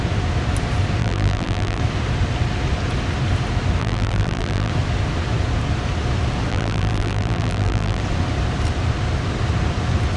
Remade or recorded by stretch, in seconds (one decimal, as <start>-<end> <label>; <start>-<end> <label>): 0.0-1.0 recorded; 1.0-1.8 remade; 1.8-3.8 recorded; 3.8-4.7 remade; 4.7-6.5 recorded; 6.5-8.0 remade; 8.0-10.2 recorded